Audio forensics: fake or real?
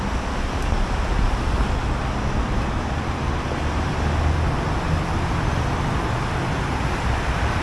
real